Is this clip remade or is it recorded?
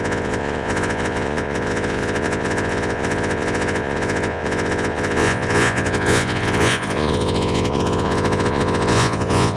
remade